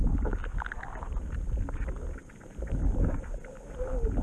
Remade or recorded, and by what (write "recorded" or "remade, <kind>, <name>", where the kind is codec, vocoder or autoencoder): recorded